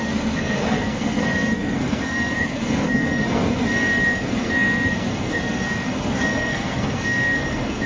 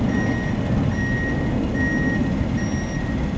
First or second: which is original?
second